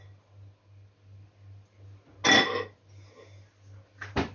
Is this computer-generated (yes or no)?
no